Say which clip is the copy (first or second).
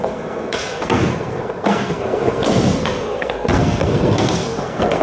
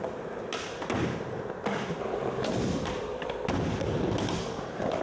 first